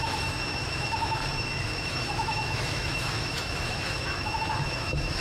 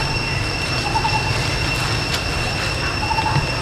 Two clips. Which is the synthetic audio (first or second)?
first